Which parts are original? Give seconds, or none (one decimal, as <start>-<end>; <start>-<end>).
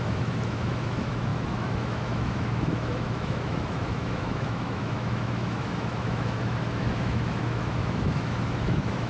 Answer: none